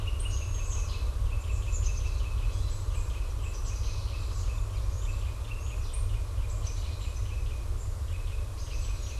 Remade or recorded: recorded